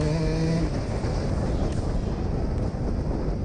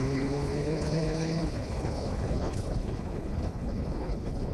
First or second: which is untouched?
first